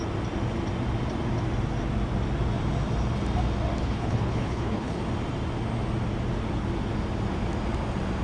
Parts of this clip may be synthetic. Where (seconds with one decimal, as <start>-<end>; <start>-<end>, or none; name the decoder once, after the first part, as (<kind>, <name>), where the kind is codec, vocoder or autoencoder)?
3.8-5.0 (codec, HILCodec)